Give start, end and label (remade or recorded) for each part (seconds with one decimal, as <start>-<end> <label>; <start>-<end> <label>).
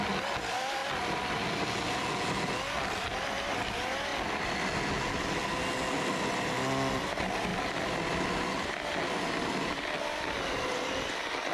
0.0-11.5 recorded